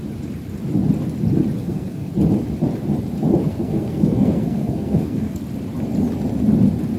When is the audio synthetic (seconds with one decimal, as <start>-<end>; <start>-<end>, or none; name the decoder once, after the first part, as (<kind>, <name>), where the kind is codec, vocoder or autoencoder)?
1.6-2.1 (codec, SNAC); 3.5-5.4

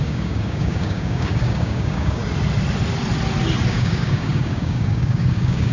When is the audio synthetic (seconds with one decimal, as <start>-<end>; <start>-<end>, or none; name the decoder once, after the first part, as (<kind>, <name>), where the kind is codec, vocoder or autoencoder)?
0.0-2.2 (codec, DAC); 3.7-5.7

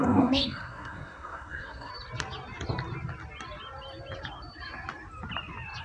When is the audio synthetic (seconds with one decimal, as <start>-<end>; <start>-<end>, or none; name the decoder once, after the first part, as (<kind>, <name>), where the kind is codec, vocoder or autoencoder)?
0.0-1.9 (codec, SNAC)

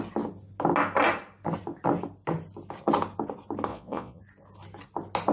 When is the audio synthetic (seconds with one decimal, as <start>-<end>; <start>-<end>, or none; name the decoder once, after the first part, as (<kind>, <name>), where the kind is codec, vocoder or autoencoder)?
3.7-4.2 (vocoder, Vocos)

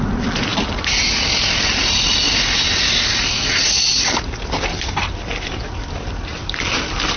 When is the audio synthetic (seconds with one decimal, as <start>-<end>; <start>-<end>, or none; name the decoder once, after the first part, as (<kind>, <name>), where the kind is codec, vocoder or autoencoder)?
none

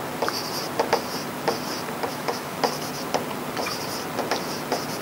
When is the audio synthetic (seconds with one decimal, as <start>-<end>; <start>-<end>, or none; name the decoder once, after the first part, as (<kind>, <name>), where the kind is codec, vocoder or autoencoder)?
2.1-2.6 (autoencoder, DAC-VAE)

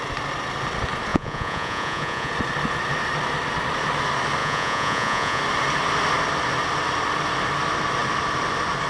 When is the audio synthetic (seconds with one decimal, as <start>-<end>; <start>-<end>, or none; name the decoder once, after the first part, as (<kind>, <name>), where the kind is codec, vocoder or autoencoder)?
1.1-2.3 (vocoder, Vocos); 4.4-5.4